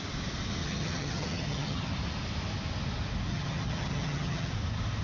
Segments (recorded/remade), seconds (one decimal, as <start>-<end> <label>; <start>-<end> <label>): 0.0-0.6 recorded; 0.6-1.9 remade; 1.9-3.3 recorded; 3.3-4.5 remade; 4.5-5.0 recorded